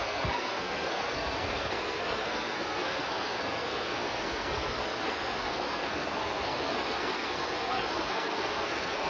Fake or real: fake